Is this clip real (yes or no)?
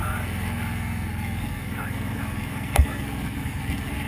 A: no